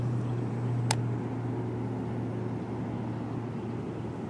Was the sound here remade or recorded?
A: recorded